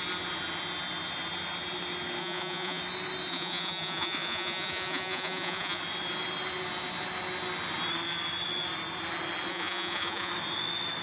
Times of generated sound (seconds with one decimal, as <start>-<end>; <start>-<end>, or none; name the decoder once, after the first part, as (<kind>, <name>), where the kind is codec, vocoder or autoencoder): 2.2-2.8 (vocoder, Vocos); 3.3-5.8; 9.5-10.3